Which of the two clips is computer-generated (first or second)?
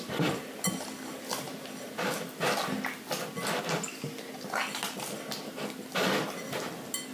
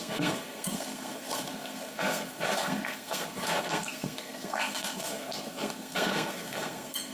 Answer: second